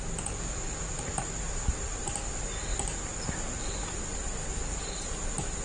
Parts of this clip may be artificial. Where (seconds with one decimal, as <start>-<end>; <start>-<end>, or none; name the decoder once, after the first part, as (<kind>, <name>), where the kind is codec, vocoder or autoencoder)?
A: none